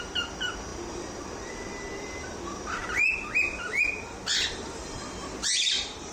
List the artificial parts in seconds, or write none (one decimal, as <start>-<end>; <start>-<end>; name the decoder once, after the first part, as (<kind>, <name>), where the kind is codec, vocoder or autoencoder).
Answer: 4.3-6.1 (vocoder, BigVGAN v2)